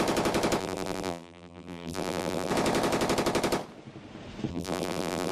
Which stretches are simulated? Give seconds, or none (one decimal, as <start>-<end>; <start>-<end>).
0.6-2.5; 4.5-5.3